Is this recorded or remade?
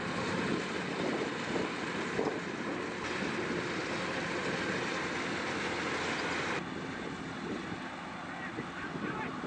recorded